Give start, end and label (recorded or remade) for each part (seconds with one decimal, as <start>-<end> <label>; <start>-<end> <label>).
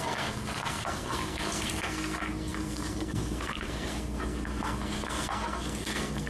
0.0-6.3 remade